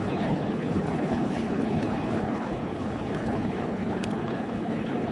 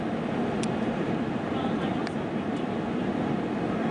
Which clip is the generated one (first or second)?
first